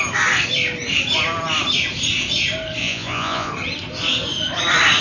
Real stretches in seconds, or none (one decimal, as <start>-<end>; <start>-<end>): 0.0-2.8; 3.5-5.0